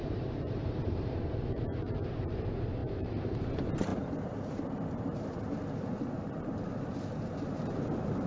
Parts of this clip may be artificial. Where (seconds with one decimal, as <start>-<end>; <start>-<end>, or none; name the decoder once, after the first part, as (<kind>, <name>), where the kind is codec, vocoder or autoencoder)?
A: 0.0-8.3 (vocoder, BigVGAN v2)